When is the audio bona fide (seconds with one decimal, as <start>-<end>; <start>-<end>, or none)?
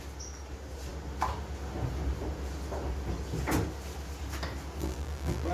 0.0-4.8